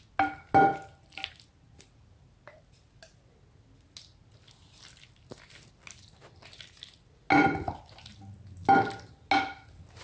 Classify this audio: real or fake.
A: real